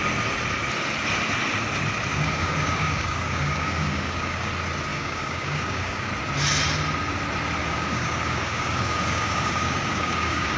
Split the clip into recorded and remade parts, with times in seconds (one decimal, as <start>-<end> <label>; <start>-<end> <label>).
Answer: 0.0-2.1 recorded; 2.1-4.5 remade; 4.5-4.9 recorded; 4.9-6.1 remade; 6.1-7.6 recorded; 7.6-10.6 remade